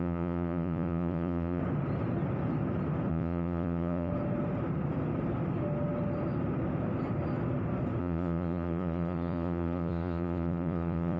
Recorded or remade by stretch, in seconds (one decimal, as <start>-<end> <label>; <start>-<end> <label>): 0.0-1.6 remade; 1.6-3.1 recorded; 3.1-4.1 remade; 4.1-8.0 recorded; 8.0-11.2 remade